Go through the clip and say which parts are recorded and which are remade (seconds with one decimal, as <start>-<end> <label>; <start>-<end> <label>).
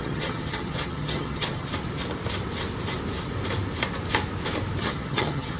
0.0-1.7 remade; 1.7-4.8 recorded; 4.8-5.6 remade